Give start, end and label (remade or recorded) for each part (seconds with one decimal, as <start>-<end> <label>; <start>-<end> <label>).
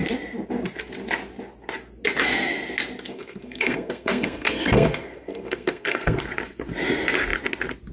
0.0-3.1 recorded; 3.1-6.2 remade; 6.2-7.9 recorded